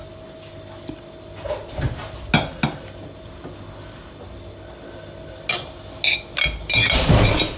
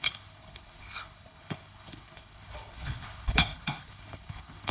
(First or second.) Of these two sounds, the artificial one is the second